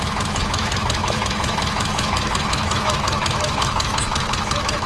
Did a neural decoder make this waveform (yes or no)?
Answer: yes